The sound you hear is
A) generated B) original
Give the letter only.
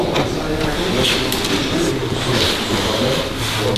B